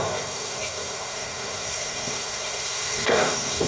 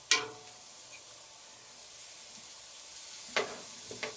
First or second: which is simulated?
first